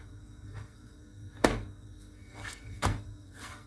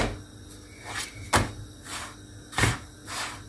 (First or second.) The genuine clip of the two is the second